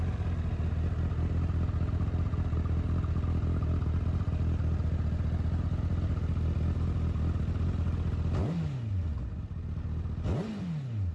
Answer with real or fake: real